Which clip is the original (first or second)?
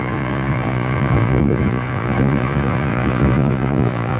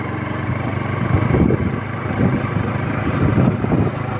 second